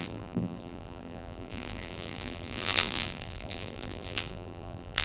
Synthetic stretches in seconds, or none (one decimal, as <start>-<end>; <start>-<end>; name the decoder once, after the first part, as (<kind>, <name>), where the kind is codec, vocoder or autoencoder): 0.0-5.0 (vocoder, BigVGAN v2)